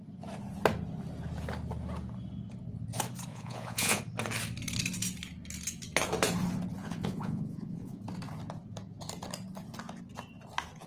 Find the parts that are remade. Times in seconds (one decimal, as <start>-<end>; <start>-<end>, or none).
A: 3.3-4.0; 6.8-8.0